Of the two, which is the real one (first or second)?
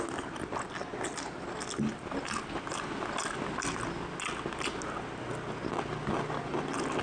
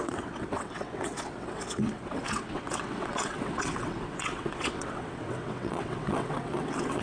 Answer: first